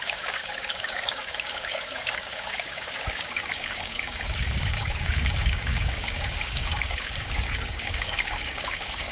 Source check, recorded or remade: remade